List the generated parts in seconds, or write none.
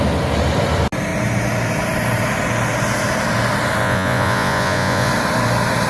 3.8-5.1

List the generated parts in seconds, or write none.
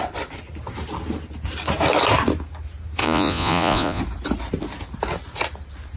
3.0-4.0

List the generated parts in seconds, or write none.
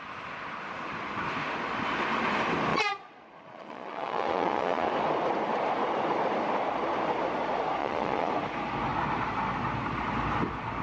2.7-4.9; 7.8-8.3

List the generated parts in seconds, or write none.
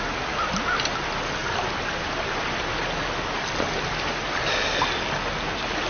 none